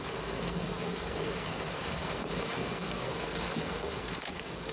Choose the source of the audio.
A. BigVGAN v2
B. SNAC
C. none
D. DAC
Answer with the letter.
B